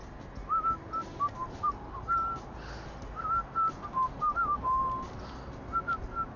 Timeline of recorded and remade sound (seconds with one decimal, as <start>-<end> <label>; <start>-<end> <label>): 0.0-6.4 recorded